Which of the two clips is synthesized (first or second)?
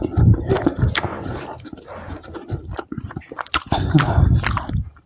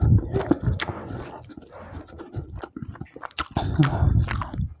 first